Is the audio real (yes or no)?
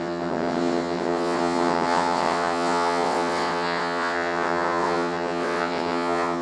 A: no